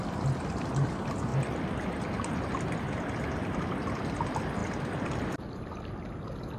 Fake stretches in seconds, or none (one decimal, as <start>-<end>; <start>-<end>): none